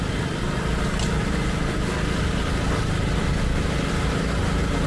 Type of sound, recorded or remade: recorded